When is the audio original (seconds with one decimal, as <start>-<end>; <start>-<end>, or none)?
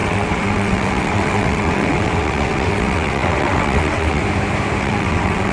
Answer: 4.2-4.8